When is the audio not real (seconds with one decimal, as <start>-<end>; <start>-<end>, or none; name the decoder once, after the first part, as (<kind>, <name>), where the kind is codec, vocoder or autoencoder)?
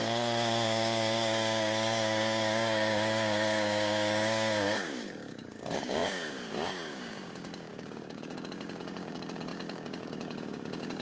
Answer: 0.0-11.0 (codec, DAC)